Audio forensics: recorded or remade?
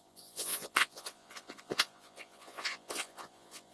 remade